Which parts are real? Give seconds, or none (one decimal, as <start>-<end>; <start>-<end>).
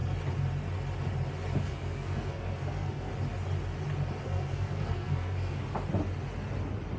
0.0-1.6; 3.1-4.2; 5.6-7.0